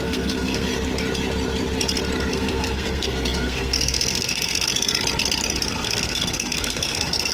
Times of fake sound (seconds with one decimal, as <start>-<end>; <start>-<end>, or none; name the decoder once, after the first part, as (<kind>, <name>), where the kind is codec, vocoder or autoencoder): 0.0-0.7 (codec, SNAC); 2.3-4.7; 5.7-7.3